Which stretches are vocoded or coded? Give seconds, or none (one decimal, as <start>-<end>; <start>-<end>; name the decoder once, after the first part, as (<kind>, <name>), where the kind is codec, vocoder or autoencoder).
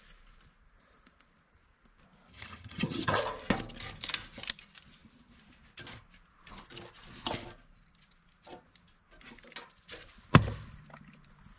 2.3-3.2 (vocoder, HiFi-GAN)